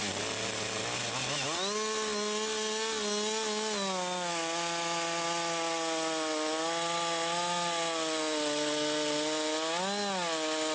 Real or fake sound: real